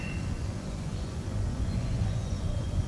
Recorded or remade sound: remade